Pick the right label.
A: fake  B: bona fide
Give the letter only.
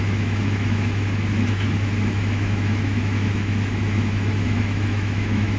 A